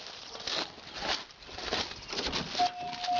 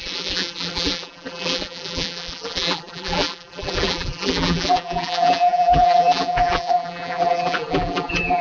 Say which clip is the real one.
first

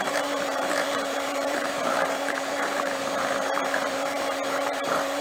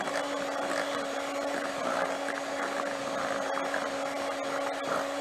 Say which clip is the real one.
second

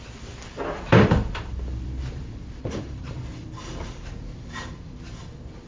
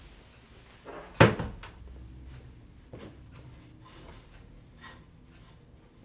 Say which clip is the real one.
second